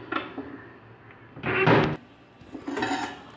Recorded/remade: recorded